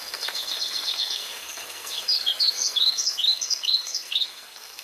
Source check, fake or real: fake